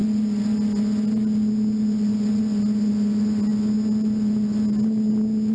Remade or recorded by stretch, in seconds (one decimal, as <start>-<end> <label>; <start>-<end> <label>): 0.0-5.5 recorded